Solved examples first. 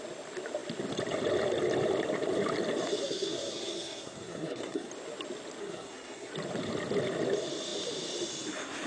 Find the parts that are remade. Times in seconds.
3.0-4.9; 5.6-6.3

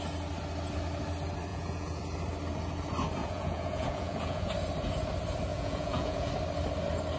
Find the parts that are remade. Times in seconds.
1.5-2.0; 3.2-4.5; 5.5-6.3

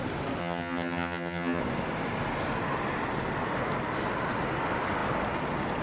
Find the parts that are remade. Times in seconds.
0.4-1.6

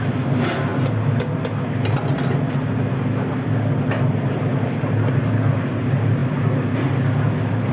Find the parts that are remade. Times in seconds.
none

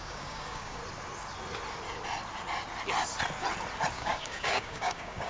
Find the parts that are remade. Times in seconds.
0.0-0.8; 3.9-5.3